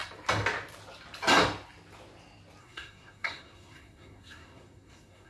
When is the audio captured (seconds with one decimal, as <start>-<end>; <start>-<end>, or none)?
0.0-2.6